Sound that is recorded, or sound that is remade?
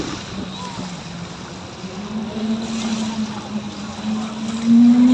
recorded